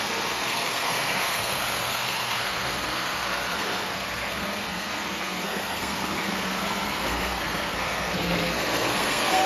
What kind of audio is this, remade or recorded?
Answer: remade